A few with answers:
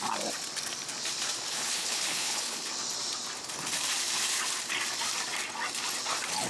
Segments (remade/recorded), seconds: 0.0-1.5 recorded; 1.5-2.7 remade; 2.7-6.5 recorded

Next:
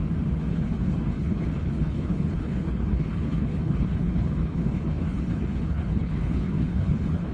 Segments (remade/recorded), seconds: 0.0-0.5 recorded; 0.5-7.3 remade

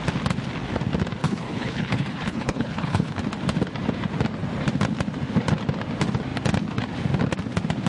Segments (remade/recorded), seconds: 0.0-1.2 recorded; 1.2-3.2 remade; 3.2-7.9 recorded

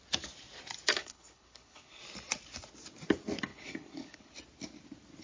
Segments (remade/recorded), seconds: 0.0-0.9 recorded; 0.9-2.0 remade; 2.0-3.5 recorded; 3.5-4.3 remade; 4.3-5.2 recorded